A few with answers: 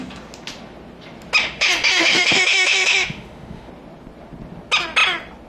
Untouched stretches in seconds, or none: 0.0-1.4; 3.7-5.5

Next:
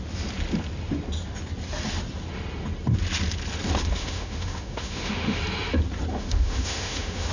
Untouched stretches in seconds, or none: 0.0-4.0; 5.4-6.1